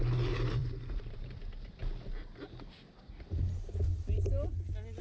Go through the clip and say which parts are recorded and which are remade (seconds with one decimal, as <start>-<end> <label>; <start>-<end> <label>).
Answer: 0.0-0.6 recorded; 0.6-1.3 remade; 1.3-5.0 recorded